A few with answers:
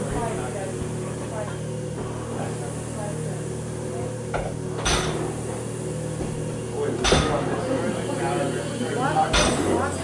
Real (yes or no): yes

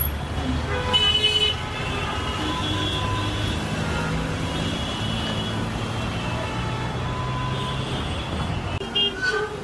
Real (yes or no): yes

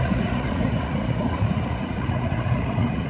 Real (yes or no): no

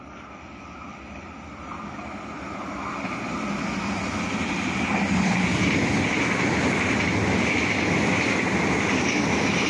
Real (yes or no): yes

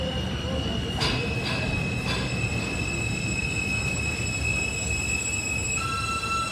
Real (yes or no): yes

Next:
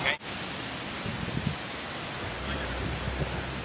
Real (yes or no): yes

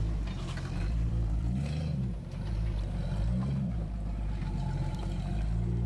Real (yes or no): no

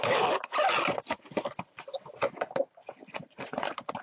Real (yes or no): yes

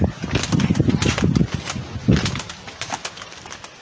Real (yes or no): yes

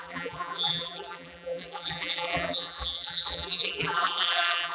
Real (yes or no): no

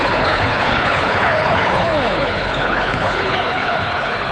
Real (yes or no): no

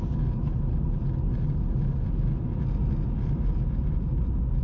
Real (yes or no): yes